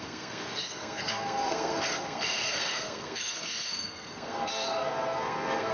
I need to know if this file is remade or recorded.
remade